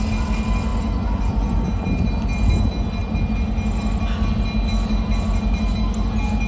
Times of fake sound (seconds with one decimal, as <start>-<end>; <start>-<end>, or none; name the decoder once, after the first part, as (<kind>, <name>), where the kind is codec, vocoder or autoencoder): none